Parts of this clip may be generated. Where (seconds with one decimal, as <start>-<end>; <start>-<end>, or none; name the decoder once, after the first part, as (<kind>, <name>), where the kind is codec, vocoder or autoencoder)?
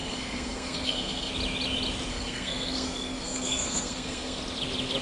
0.0-1.3 (codec, SNAC); 2.1-4.4